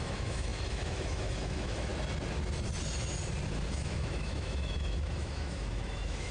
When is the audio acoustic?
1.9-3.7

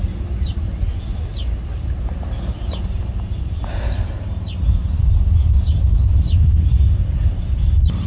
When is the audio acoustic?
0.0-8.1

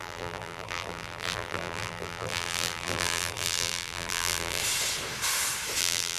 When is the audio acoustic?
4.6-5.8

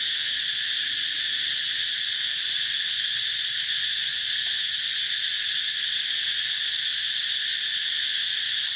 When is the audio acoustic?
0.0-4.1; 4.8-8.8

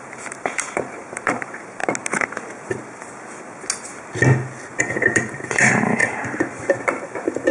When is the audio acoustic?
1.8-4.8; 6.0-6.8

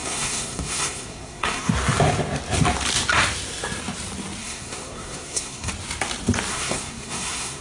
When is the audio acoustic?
1.7-4.4; 5.7-6.5

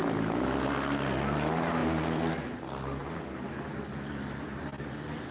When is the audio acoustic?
0.0-5.3